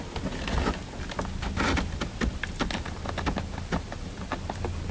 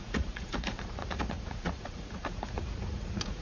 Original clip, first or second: first